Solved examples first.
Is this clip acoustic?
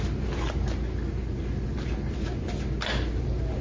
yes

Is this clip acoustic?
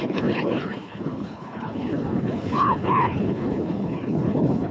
no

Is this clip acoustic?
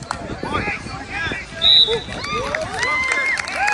yes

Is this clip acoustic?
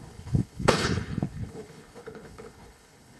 no